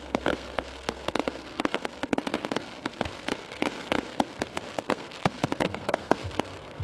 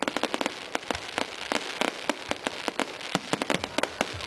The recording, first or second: second